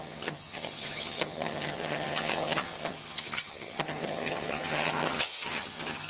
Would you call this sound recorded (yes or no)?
no